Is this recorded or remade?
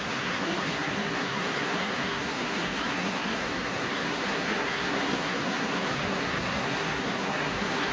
remade